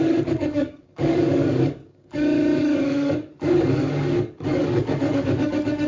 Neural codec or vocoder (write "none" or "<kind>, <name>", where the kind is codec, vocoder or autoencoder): codec, DAC